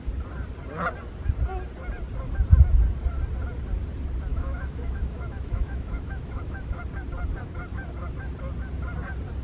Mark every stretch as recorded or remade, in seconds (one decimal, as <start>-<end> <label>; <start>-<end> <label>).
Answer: 0.0-4.3 recorded; 4.3-6.8 remade; 6.8-9.4 recorded